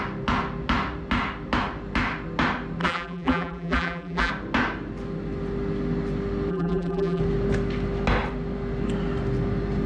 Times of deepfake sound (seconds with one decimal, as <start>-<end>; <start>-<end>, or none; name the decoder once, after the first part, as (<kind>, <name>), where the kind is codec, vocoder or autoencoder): 2.8-4.3 (vocoder, BigVGAN v2); 6.5-7.2